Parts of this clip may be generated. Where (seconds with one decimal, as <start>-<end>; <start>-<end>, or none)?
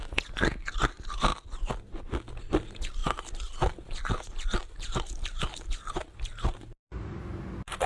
none